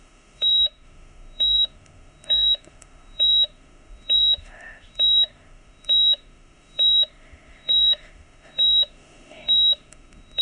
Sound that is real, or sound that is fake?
fake